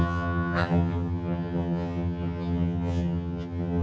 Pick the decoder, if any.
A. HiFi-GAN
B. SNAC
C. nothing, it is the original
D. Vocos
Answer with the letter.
A